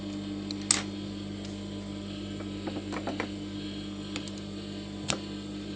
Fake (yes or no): no